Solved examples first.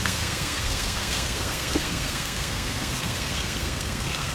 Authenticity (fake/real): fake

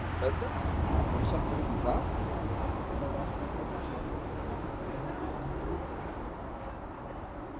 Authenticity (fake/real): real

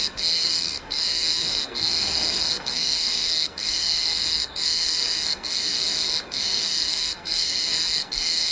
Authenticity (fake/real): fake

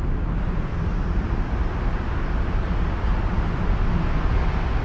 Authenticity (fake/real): real